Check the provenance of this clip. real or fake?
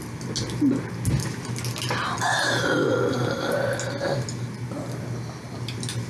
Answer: real